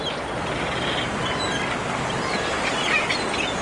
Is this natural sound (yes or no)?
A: yes